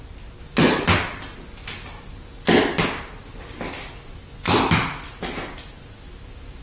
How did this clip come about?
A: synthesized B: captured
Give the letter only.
B